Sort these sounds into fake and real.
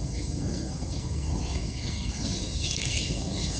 fake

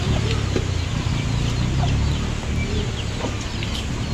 real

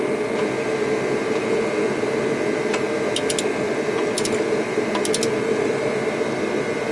real